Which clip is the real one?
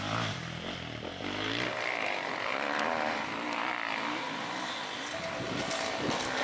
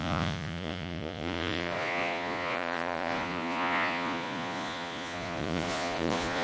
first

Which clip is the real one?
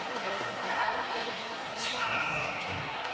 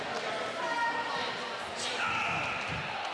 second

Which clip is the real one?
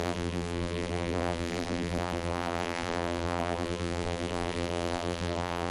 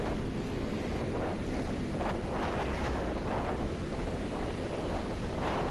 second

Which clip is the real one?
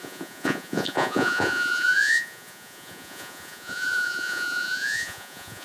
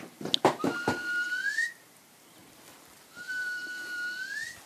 second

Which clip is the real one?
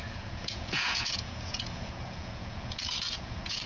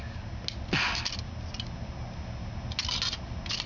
second